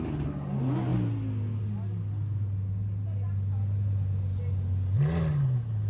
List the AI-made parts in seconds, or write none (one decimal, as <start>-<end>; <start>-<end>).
none